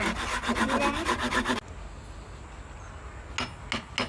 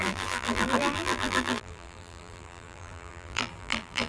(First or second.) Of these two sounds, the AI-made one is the second